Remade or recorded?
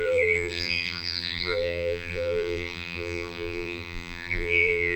remade